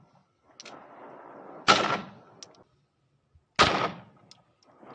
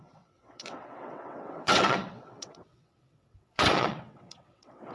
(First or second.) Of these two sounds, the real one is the first